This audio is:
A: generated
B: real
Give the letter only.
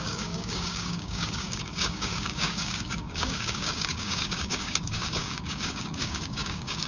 A